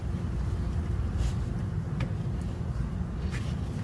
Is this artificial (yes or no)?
no